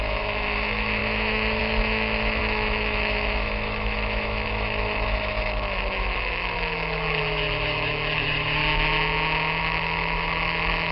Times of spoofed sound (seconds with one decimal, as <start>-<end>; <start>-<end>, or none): 0.0-8.6; 9.6-10.9